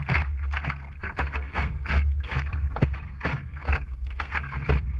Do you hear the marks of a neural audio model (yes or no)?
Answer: yes